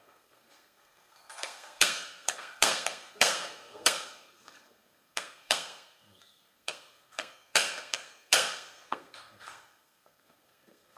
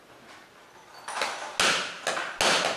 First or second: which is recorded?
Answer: second